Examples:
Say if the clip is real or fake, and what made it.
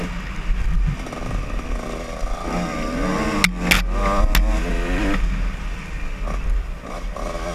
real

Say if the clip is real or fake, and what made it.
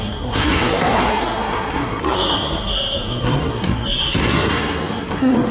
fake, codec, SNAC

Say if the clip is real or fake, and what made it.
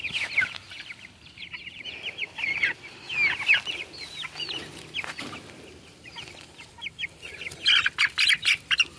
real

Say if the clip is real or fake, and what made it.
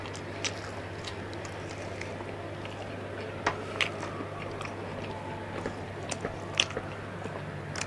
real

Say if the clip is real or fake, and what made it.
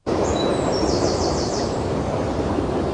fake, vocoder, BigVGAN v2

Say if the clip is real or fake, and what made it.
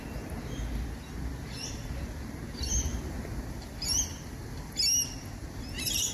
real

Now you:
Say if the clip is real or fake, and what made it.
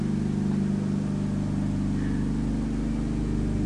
real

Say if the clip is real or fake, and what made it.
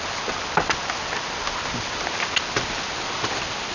real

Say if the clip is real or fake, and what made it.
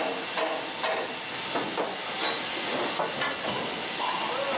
real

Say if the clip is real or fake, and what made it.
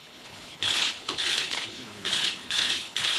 fake, codec, HILCodec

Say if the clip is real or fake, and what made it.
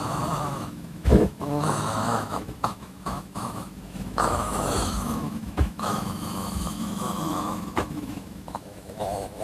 fake, autoencoder, DAC-VAE